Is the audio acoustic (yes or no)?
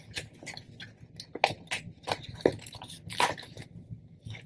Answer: yes